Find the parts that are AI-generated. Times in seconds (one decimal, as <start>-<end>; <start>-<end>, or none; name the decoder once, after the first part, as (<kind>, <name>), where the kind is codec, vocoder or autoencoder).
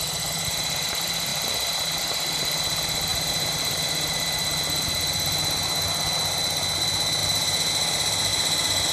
3.1-3.8 (vocoder, BigVGAN v2); 7.2-7.7